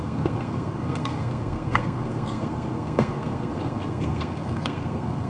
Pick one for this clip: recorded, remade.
remade